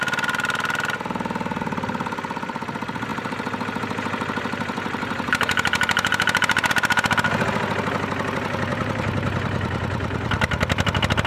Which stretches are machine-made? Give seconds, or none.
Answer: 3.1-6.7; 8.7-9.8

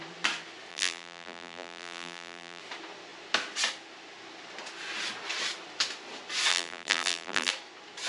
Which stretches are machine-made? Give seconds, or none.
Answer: 0.7-2.6; 6.5-7.5

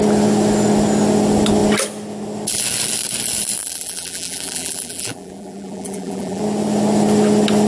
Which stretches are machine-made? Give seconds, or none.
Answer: 3.6-6.4

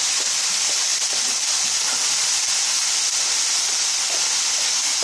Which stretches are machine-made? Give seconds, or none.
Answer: none

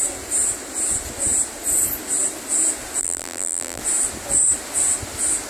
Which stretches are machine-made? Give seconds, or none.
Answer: 3.0-3.8

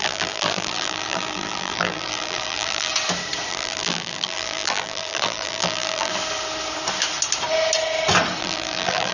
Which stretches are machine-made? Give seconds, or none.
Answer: 0.0-2.9; 3.5-6.1; 8.4-9.1